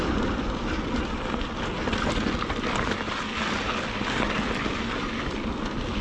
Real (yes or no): yes